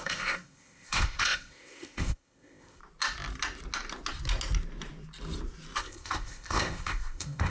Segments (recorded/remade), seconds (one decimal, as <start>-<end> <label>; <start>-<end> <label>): 0.0-2.8 remade; 2.8-5.8 recorded; 5.8-7.5 remade